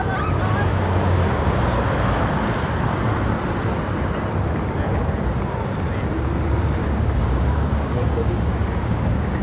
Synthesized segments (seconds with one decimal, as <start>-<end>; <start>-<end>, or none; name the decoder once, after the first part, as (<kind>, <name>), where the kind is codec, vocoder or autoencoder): 0.7-1.6 (codec, DAC); 6.8-9.4